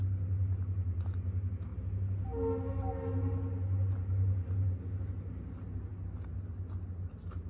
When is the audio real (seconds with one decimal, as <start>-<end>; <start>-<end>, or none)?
0.0-7.5